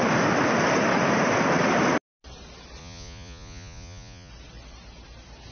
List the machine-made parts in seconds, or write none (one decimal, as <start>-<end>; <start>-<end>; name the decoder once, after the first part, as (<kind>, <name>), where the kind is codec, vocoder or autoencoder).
2.8-4.3 (vocoder, Vocos)